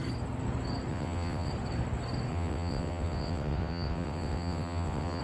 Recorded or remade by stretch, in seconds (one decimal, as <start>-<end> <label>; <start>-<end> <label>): 0.0-0.9 recorded; 0.9-1.5 remade; 1.5-2.3 recorded; 2.3-5.2 remade